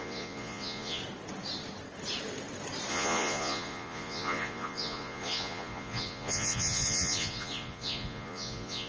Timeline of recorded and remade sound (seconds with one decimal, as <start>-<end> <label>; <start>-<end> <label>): 0.0-1.0 remade; 1.0-2.9 recorded; 2.9-8.9 remade